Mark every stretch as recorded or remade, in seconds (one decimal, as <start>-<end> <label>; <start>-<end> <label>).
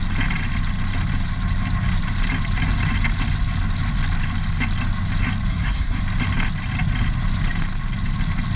0.0-5.5 recorded; 5.5-6.0 remade; 6.0-8.6 recorded